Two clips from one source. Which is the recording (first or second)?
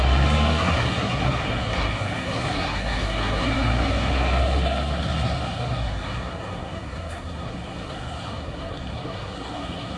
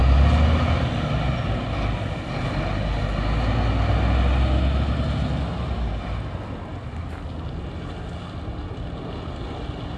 second